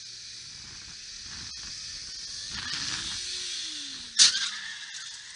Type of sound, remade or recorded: recorded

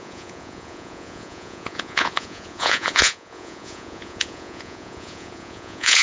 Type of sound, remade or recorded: remade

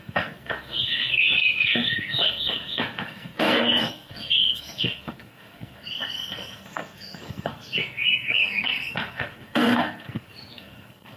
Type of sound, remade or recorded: remade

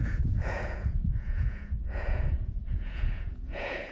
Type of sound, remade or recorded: remade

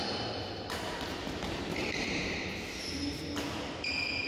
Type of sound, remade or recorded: recorded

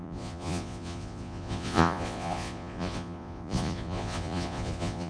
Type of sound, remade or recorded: remade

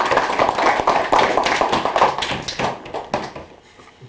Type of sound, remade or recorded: recorded